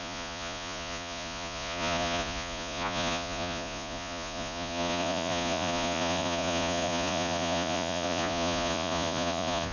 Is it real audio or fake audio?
fake